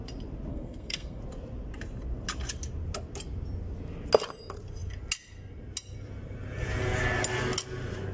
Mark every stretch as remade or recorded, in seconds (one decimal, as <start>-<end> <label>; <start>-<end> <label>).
0.0-0.5 recorded; 0.5-1.2 remade; 1.2-8.1 recorded